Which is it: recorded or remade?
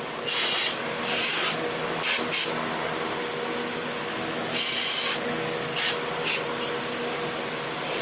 recorded